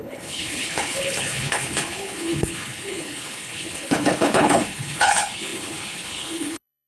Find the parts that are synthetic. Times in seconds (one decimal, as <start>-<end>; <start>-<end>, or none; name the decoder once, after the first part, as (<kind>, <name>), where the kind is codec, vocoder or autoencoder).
0.0-6.9 (codec, HILCodec)